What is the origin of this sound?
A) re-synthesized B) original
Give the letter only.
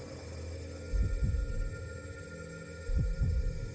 B